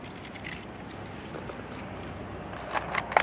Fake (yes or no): no